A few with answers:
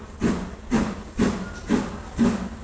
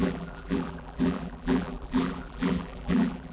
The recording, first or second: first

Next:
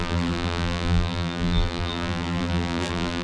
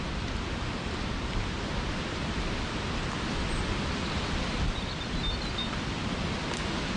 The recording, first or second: second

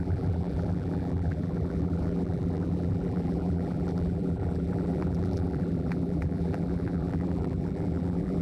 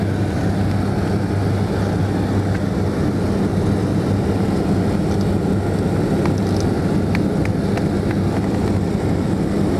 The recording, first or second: second